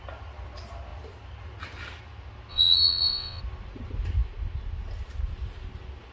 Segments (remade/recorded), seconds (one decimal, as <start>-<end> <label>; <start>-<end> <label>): 0.0-2.5 recorded; 2.5-3.4 remade; 3.4-6.1 recorded